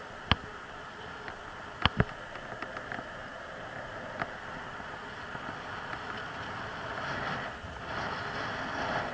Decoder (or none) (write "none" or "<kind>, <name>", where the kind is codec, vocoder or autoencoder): none